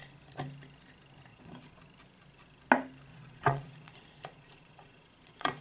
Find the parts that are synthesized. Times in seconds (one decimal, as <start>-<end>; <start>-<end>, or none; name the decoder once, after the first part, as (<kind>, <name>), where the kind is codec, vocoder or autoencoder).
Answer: 1.3-1.8 (vocoder, Vocos); 3.1-5.6